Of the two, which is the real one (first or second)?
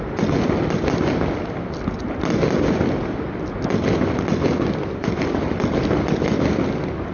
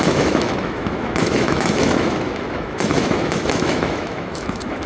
first